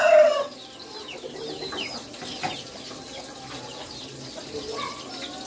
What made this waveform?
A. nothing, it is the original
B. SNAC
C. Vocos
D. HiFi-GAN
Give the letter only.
A